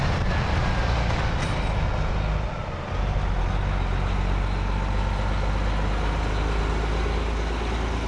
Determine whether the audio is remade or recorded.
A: recorded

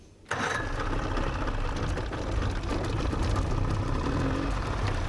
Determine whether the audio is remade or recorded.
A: recorded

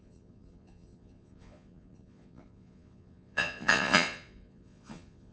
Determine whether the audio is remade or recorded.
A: remade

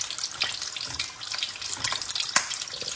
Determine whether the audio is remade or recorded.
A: recorded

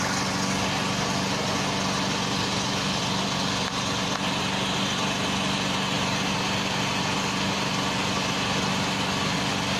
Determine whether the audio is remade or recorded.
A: recorded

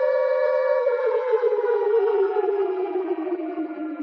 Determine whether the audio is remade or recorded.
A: remade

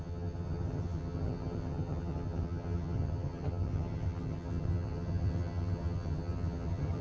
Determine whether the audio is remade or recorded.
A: remade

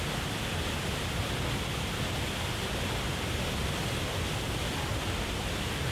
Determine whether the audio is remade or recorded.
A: recorded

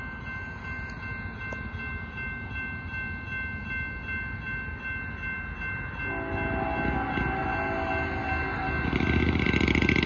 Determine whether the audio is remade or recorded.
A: recorded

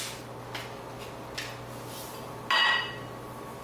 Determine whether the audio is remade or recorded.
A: recorded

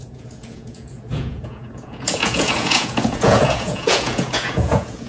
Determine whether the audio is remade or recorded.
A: remade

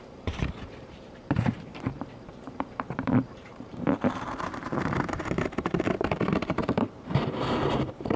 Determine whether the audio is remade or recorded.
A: remade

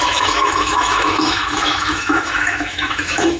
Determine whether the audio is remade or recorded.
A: remade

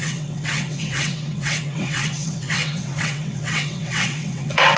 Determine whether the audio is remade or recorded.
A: remade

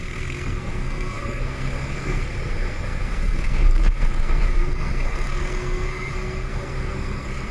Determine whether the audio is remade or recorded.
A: remade